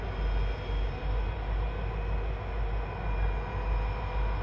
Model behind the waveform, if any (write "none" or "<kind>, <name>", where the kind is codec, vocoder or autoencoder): none